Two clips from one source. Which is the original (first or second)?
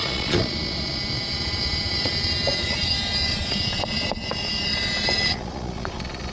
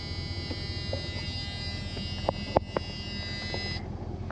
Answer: second